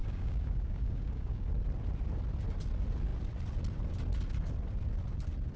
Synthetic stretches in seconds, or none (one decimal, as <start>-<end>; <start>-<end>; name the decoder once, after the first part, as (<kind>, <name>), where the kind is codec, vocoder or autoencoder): 0.0-1.5 (codec, DAC)